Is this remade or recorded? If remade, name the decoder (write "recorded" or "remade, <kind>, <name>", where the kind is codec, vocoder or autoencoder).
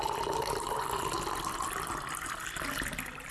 recorded